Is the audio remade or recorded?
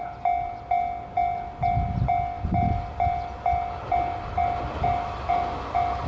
recorded